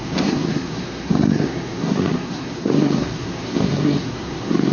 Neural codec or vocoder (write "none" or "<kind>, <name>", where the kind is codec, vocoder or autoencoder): codec, SNAC